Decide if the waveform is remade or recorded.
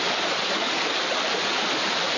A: recorded